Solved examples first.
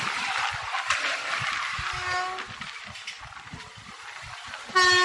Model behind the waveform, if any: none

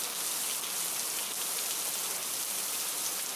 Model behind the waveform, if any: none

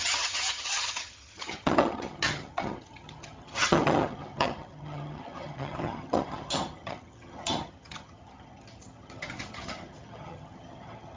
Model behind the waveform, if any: vocoder, HiFi-GAN